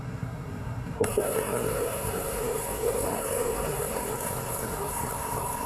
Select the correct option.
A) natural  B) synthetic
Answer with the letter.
B